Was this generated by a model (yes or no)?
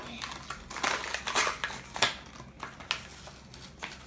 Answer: no